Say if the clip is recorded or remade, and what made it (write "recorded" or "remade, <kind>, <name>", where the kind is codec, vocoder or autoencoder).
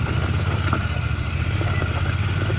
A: recorded